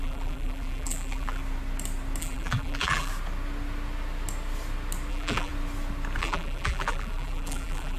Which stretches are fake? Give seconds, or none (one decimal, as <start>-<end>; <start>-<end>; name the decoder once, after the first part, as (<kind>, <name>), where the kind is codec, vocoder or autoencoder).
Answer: 0.0-1.4 (vocoder, BigVGAN v2); 2.2-3.1; 5.1-5.5; 6.2-8.0